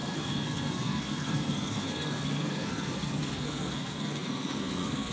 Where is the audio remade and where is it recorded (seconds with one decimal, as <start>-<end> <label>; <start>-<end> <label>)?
0.0-5.1 remade